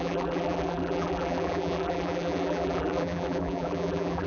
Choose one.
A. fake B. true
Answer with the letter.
A